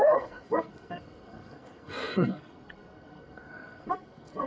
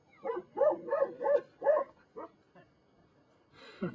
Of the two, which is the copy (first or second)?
first